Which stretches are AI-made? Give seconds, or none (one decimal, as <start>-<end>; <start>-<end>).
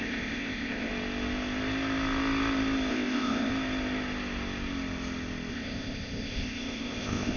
0.0-0.9; 2.9-3.5; 5.5-7.4